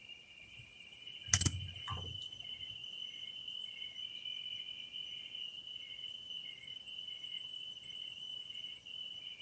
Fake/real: real